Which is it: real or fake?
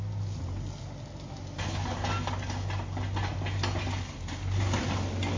real